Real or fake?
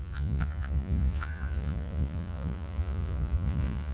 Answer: fake